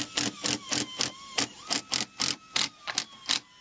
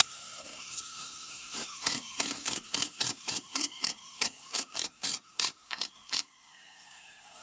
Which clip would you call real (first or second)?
first